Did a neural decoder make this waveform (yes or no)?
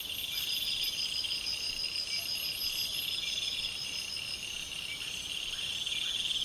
no